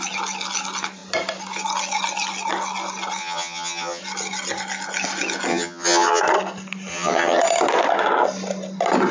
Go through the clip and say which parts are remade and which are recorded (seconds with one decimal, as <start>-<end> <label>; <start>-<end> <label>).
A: 0.0-3.2 recorded; 3.2-4.0 remade; 4.0-5.5 recorded; 5.5-6.2 remade; 6.2-6.9 recorded; 6.9-7.4 remade; 7.4-9.1 recorded